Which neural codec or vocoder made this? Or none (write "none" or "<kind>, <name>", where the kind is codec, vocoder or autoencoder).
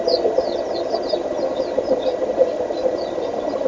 none